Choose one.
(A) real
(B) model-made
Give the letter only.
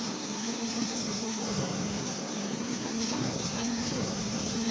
B